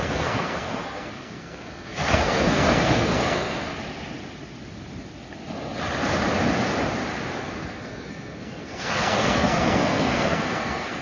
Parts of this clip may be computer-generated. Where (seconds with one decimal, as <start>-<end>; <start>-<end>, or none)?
0.0-3.7; 7.4-11.0